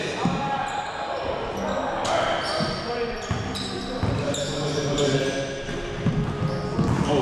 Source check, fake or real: real